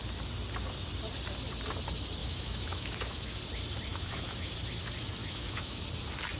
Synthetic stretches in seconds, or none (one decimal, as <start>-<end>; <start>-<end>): 2.2-3.4; 3.9-4.5; 5.2-5.8